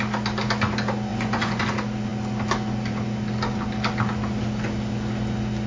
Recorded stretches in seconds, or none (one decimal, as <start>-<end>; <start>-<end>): 0.0-1.1; 1.6-5.7

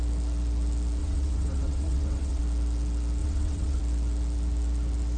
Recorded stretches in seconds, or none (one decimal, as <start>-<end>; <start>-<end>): 0.0-1.0; 2.4-3.2; 3.8-5.2

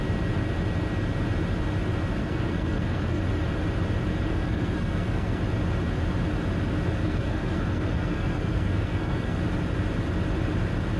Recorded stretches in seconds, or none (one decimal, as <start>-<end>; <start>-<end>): 0.0-2.2; 3.2-4.3; 5.4-7.0; 9.4-11.0

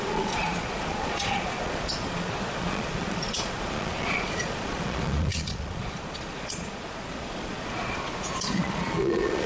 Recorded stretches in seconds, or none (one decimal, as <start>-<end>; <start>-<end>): none

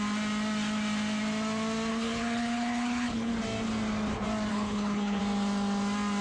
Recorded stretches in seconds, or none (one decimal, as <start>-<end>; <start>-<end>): 0.0-1.9; 3.3-4.5; 5.2-6.2

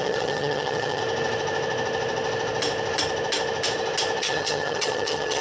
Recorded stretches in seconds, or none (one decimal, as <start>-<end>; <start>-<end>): 1.0-4.2